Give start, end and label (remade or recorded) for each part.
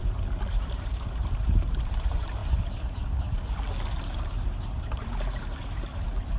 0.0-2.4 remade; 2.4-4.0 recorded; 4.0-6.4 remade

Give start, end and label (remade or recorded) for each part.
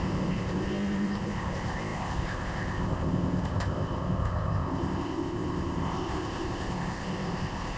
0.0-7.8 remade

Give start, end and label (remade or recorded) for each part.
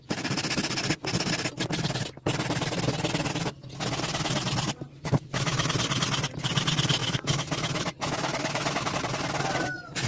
0.0-4.9 recorded; 4.9-5.7 remade; 5.7-7.0 recorded; 7.0-8.9 remade; 8.9-10.1 recorded